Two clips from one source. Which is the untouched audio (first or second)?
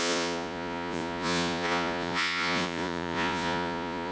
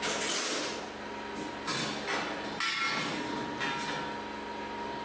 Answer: second